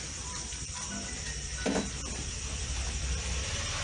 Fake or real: fake